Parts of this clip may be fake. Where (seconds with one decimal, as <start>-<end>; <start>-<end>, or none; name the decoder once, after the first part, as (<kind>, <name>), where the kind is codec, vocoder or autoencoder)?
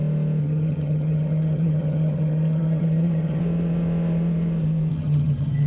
0.4-3.4 (vocoder, HiFi-GAN); 4.9-5.7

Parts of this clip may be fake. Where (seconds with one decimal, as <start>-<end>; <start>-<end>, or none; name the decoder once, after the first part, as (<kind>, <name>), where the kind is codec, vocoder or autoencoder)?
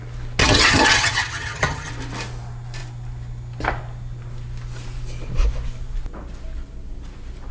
0.4-1.9 (vocoder, HiFi-GAN)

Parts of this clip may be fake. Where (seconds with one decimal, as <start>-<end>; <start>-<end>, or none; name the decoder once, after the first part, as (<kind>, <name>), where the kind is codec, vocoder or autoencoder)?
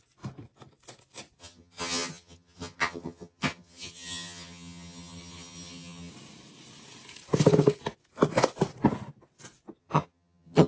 1.4-6.1 (vocoder, HiFi-GAN); 9.8-10.7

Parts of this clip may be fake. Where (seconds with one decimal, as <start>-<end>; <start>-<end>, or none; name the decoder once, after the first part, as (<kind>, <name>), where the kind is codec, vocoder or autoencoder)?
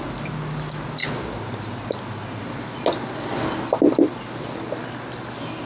none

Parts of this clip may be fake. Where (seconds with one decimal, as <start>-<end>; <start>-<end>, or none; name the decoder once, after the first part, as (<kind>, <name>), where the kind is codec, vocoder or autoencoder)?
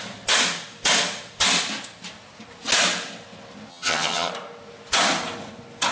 3.7-4.3 (vocoder, HiFi-GAN)